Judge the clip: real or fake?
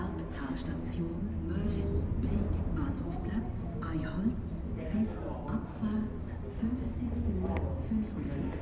real